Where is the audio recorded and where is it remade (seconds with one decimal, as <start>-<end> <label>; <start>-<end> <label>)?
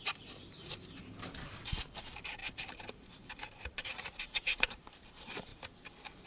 0.0-5.5 remade; 5.5-6.3 recorded